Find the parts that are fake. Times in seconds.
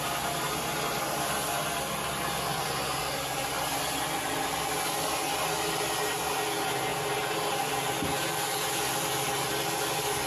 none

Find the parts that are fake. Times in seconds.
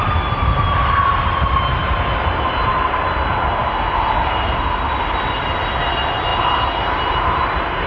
none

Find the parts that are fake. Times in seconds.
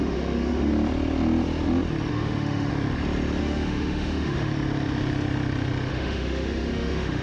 0.0-0.7; 2.1-2.7; 3.4-4.5; 5.9-7.2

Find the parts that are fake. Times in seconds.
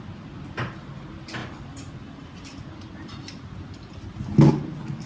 none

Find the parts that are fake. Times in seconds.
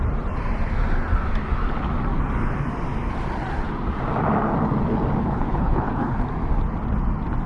5.2-6.2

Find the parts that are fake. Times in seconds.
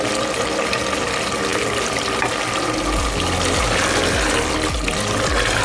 none